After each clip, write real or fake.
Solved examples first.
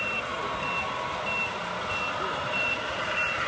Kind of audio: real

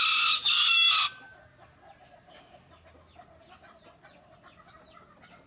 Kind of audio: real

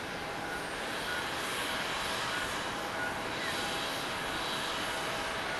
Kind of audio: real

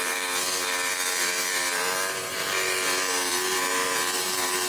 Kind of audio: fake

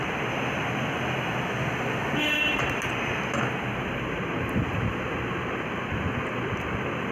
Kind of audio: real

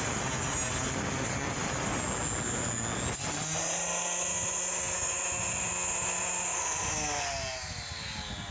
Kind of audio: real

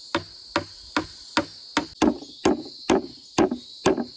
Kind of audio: real